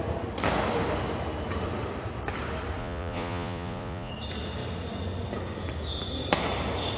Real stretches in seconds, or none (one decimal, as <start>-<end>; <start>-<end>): 0.0-2.8; 4.1-7.0